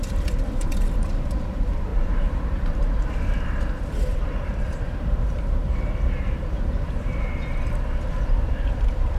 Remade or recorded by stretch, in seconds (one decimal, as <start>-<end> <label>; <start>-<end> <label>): 0.0-9.2 remade

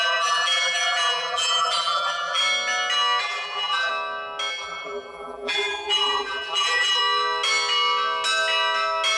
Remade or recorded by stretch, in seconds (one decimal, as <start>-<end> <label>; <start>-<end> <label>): 0.0-2.4 remade; 2.4-3.2 recorded; 3.2-3.9 remade; 3.9-4.5 recorded; 4.5-7.0 remade; 7.0-9.2 recorded

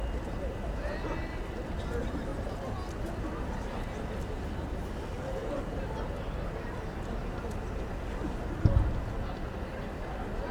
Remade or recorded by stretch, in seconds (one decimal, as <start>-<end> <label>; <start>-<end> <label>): 0.0-5.4 recorded; 5.4-6.0 remade; 6.0-10.5 recorded

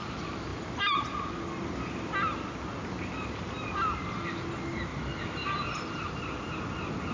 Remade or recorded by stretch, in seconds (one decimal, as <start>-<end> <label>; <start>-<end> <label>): 0.0-4.9 recorded; 4.9-6.1 remade; 6.1-7.1 recorded

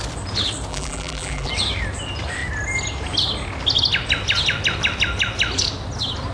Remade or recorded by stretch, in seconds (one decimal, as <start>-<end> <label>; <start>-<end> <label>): 0.0-0.7 recorded; 0.7-1.5 remade; 1.5-6.3 recorded

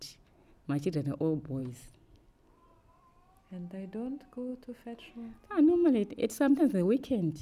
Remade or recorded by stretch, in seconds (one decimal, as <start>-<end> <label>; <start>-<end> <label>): 0.0-7.4 recorded